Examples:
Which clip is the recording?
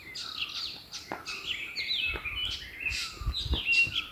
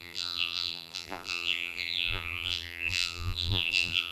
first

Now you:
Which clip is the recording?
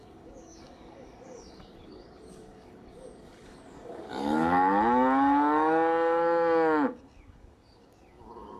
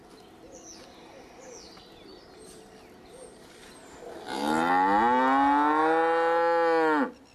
second